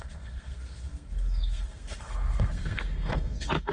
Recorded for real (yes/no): no